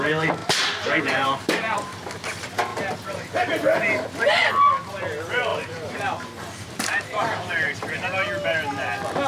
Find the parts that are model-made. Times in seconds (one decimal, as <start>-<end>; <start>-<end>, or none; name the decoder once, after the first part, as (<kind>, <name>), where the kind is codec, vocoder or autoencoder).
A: 0.4-1.9 (vocoder, BigVGAN v2); 2.7-4.5; 5.5-7.5